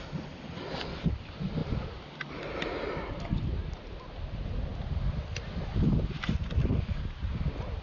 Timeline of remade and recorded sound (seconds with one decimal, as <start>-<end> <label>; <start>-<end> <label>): 0.0-7.8 recorded